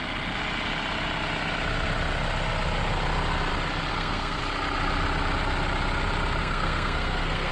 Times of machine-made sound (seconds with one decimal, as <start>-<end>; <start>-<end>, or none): 3.9-4.4; 6.4-7.5

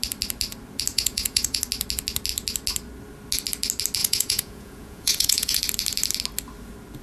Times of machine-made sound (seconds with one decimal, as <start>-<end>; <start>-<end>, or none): 0.9-1.6; 4.0-5.6

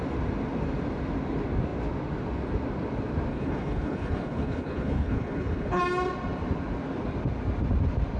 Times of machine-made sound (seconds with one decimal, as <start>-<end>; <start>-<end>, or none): 3.3-5.8

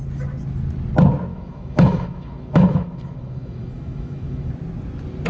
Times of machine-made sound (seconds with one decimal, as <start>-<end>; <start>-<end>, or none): 1.3-4.5

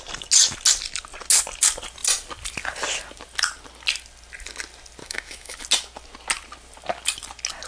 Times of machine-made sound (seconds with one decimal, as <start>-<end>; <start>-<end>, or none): 5.0-5.6

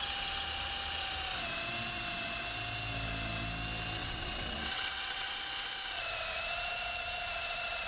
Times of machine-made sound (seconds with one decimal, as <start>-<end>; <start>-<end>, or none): 4.0-5.3